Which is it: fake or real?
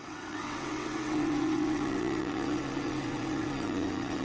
fake